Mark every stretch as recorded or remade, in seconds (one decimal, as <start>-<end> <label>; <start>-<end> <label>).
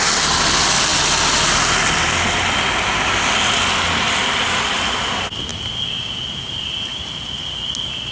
0.0-8.1 recorded